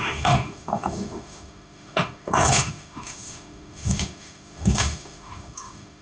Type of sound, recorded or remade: remade